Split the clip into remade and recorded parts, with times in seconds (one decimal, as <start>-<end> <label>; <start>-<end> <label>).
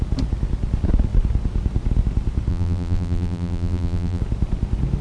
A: 0.0-2.5 recorded; 2.5-4.2 remade; 4.2-5.0 recorded